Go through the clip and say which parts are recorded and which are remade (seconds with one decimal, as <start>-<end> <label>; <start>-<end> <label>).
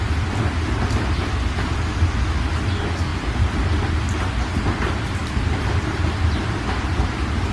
0.0-3.1 recorded; 3.1-3.8 remade; 3.8-5.2 recorded; 5.2-7.5 remade